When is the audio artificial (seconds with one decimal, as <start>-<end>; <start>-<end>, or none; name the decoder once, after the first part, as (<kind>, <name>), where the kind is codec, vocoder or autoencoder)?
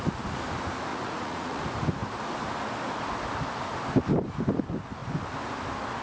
0.9-1.6 (vocoder, Vocos)